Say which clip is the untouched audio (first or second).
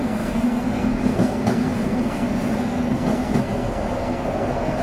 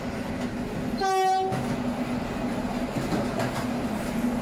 second